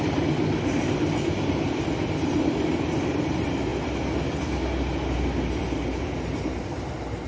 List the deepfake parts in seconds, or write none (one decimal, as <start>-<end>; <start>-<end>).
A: none

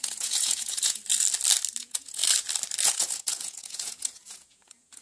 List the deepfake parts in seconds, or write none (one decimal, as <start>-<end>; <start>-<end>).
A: 0.0-1.0; 1.8-2.2; 2.9-5.0

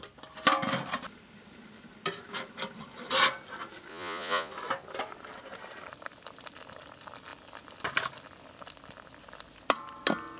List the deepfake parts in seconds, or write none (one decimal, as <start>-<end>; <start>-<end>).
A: 3.9-4.5

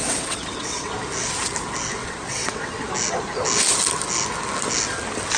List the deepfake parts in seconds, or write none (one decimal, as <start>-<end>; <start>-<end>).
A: 0.0-0.9; 2.0-2.9

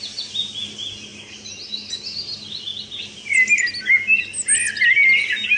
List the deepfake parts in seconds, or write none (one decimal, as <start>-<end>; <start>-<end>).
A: none

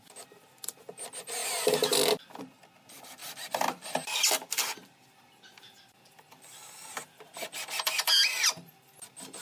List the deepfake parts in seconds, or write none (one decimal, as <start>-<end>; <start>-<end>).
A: 3.2-3.9